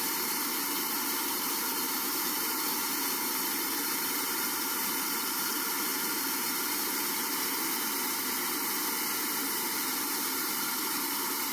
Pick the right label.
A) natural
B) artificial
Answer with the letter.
B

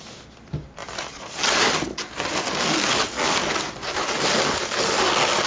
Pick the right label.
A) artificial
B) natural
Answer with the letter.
B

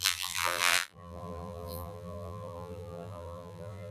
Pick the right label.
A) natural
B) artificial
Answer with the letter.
B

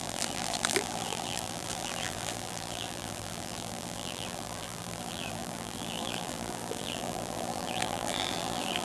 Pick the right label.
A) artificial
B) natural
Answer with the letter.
A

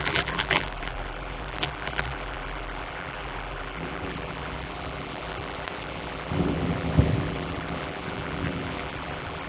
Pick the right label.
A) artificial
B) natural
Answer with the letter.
A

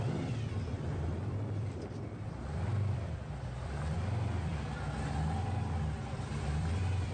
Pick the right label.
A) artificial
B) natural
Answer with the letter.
A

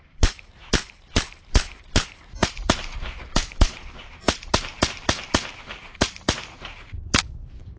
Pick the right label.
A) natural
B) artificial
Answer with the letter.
B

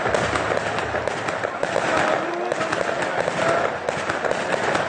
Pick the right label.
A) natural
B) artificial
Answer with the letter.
A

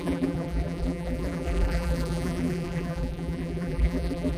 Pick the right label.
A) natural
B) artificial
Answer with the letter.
B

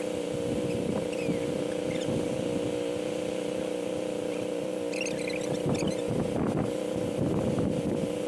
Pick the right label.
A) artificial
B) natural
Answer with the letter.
B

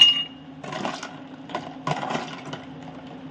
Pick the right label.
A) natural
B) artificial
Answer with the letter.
A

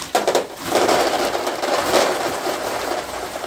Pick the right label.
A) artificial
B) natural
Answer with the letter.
A